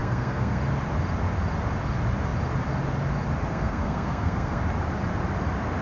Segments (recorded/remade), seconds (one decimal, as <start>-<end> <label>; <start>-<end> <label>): 0.0-0.6 remade; 0.6-3.5 recorded; 3.5-4.6 remade; 4.6-5.8 recorded